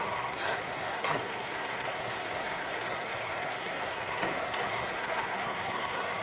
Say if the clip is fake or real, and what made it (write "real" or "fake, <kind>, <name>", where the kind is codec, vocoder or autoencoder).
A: fake, codec, SNAC